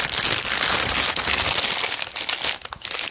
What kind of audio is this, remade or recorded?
recorded